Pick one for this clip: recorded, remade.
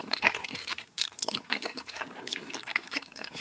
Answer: remade